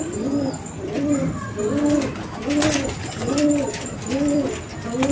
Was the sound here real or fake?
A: real